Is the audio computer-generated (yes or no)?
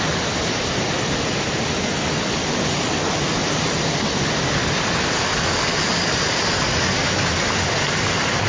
no